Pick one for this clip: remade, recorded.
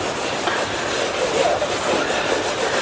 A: recorded